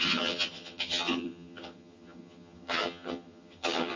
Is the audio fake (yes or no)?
yes